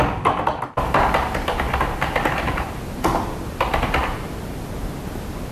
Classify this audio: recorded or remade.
recorded